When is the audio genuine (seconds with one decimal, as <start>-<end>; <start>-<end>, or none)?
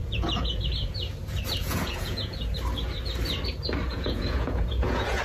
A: 0.6-1.6; 2.5-3.9